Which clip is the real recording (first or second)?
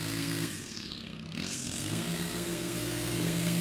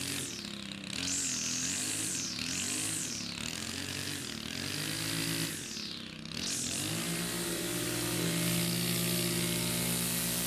second